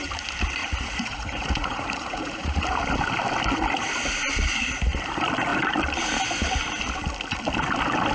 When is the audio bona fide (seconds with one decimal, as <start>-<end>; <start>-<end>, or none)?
0.0-0.6; 2.6-8.1